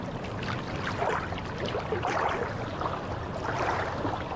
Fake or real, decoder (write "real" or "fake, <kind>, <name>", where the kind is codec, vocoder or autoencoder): real